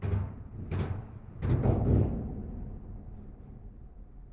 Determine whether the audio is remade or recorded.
recorded